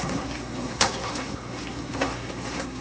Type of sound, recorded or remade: remade